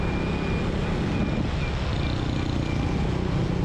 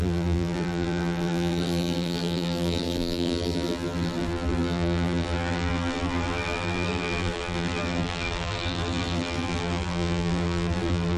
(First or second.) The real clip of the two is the first